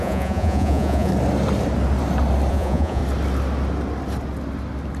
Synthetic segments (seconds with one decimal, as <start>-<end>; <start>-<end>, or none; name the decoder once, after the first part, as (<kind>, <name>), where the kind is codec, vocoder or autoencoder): 0.0-1.1 (vocoder, Vocos); 2.5-3.0